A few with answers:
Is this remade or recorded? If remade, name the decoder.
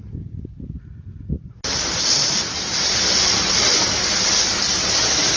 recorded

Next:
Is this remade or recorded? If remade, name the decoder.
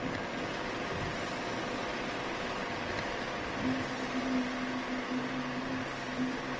recorded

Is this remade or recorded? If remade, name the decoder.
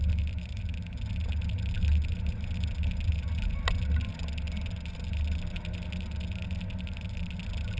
recorded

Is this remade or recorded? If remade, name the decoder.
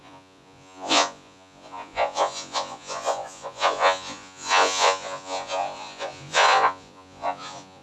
remade, vocoder, Vocos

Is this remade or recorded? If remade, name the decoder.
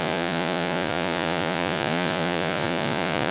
remade, vocoder, Vocos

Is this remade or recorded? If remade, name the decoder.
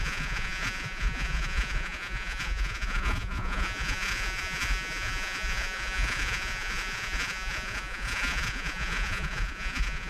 remade, vocoder, Vocos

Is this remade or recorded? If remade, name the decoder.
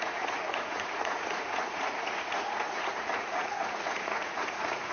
remade, vocoder, Vocos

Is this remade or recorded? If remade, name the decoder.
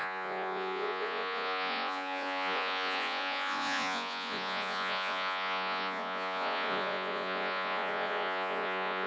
remade, vocoder, Vocos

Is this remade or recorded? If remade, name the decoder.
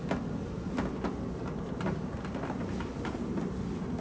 recorded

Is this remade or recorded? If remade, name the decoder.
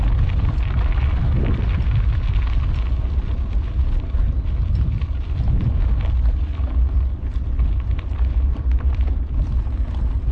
recorded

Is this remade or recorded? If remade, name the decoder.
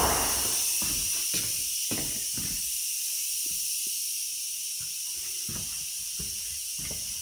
recorded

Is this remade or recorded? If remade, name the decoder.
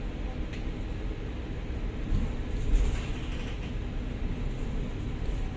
recorded